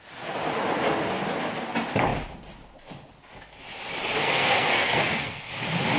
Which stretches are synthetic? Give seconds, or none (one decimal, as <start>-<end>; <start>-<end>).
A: 4.2-5.5

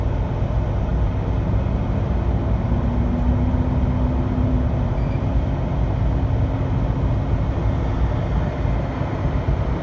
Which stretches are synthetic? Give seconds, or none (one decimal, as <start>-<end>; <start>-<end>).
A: none